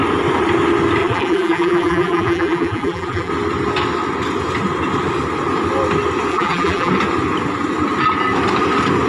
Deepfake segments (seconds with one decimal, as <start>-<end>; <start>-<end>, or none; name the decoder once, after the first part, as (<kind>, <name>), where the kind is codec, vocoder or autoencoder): 1.0-3.3 (vocoder, BigVGAN v2); 6.3-6.9